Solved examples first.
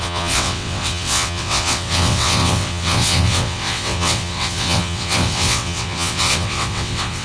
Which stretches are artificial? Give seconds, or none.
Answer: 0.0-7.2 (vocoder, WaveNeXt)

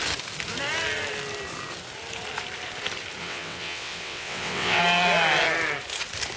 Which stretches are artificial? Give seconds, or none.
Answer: 3.2-4.8 (vocoder, WaveNeXt)

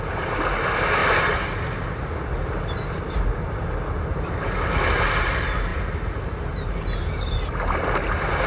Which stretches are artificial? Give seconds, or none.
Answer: none

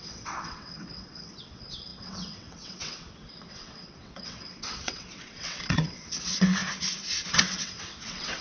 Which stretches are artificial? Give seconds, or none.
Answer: 0.0-6.6 (vocoder, WaveNeXt); 7.3-8.4

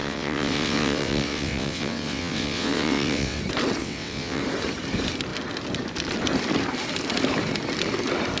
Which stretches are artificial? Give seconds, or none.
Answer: 0.0-3.4 (vocoder, WaveNeXt); 3.8-4.4